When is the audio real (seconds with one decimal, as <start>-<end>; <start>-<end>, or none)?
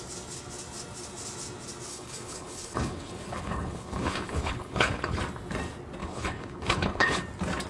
0.0-1.9; 5.2-6.0; 7.2-7.7